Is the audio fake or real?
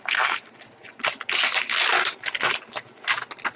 real